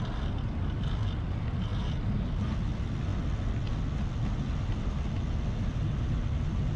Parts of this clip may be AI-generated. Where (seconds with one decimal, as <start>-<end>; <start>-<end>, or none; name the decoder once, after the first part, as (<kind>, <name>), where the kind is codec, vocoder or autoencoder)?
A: 1.7-2.3 (vocoder, BigVGAN v2)